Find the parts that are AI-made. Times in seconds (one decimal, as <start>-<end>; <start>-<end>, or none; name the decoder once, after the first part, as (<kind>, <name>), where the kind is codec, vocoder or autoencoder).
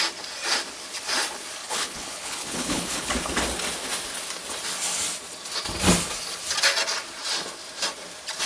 1.6-3.1 (codec, HILCodec)